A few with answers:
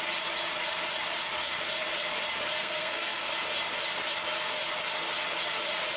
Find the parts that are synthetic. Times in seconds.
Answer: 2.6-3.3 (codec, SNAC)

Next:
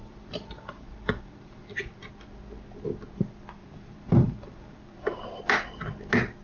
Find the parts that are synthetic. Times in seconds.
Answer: 0.0-2.1 (vocoder, BigVGAN v2); 3.6-5.4

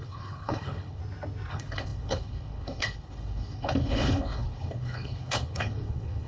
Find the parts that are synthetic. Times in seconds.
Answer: 0.0-1.0 (codec, HILCodec); 1.5-6.3

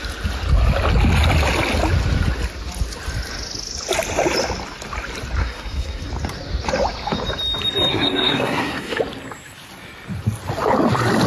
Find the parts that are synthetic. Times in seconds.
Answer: 5.4-6.1 (codec, SNAC); 7.9-9.0

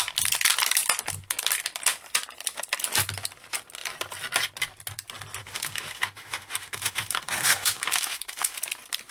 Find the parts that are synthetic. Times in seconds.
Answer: 5.4-8.6 (autoencoder, DAC-VAE)

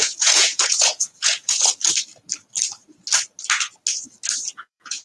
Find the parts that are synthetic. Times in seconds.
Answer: 0.0-1.6 (vocoder, Vocos); 4.6-5.0